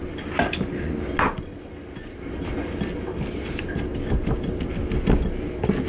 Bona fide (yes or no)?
yes